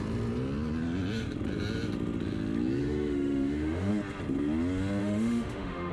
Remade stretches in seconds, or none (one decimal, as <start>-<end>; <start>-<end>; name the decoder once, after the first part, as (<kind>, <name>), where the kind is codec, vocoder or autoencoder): 2.8-3.9 (autoencoder, DAC-VAE); 5.0-5.9

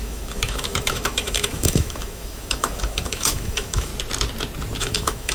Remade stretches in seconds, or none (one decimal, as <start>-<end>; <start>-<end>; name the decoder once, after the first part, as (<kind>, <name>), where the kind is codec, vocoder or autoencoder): 0.0-3.9 (autoencoder, DAC-VAE); 4.8-5.3

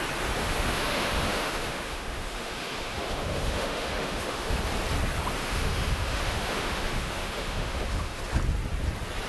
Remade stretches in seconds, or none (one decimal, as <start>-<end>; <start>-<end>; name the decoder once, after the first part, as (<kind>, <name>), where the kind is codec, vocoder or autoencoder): 0.4-4.6 (autoencoder, DAC-VAE); 5.4-8.2

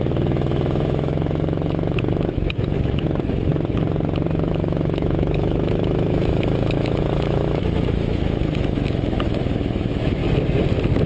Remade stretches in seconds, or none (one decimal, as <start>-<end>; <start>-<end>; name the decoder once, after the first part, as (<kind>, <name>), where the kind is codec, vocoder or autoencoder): 0.0-3.5 (autoencoder, DAC-VAE); 4.5-10.2

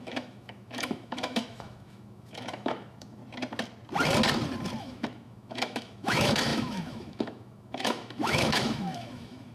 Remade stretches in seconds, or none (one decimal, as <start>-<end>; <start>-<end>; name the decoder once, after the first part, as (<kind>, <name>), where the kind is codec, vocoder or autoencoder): 0.0-3.2 (autoencoder, DAC-VAE); 4.8-9.5